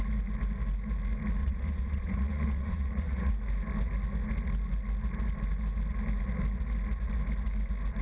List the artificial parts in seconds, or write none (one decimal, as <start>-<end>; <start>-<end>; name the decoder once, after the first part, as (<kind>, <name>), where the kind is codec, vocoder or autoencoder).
1.4-3.3 (vocoder, Vocos)